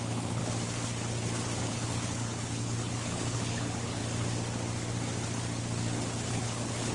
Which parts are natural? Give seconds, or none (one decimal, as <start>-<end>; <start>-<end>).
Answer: 0.4-1.7; 4.0-6.3